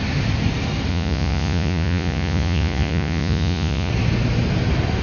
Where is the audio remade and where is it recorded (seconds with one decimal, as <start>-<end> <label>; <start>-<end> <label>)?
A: 0.0-0.9 recorded; 0.9-3.9 remade; 3.9-5.0 recorded